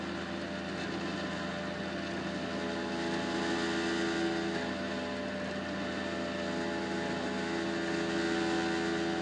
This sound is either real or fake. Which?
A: real